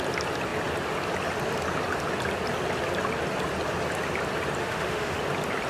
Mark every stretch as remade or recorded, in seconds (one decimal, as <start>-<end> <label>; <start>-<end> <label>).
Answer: 0.0-4.6 recorded; 4.6-5.2 remade; 5.2-5.7 recorded